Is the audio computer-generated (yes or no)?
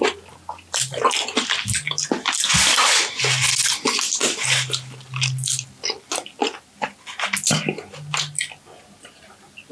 no